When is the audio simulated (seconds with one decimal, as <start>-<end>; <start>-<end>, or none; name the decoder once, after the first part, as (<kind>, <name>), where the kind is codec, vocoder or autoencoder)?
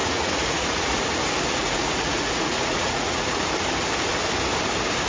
0.0-1.0 (vocoder, Vocos); 1.6-3.4